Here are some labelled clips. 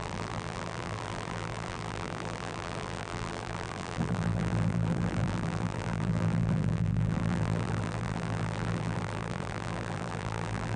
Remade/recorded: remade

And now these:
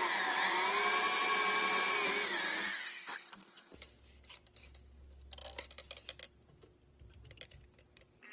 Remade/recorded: recorded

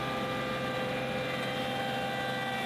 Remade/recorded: recorded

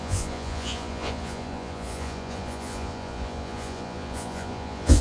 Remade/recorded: remade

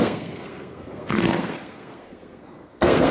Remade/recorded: remade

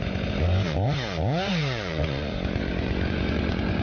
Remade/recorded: remade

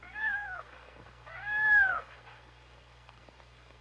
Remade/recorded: remade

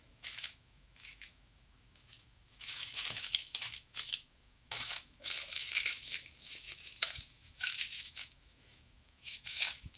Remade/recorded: remade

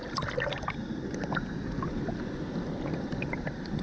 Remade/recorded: recorded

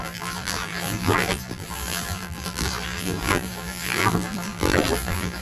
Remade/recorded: remade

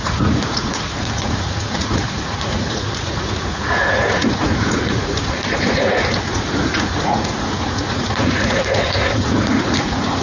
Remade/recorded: remade